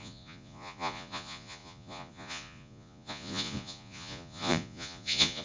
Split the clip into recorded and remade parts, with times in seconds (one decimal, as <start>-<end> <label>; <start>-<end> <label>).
0.0-5.4 remade